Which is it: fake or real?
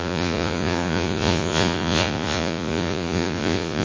fake